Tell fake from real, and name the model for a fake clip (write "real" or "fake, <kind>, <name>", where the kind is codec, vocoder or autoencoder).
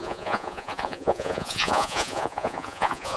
fake, vocoder, Vocos